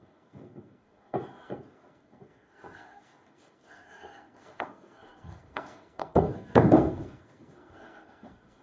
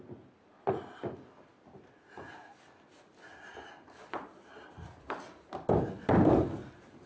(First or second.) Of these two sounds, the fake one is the first